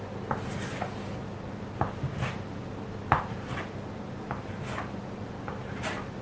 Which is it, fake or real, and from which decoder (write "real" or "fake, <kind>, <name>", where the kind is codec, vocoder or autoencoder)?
real